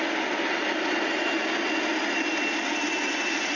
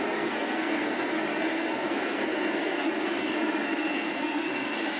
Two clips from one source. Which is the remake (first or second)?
second